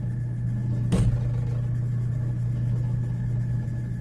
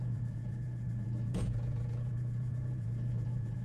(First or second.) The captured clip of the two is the first